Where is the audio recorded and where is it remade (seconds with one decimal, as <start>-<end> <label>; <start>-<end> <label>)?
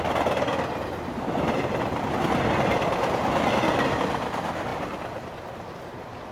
0.0-6.3 recorded